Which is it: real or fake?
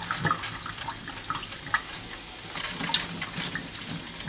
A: real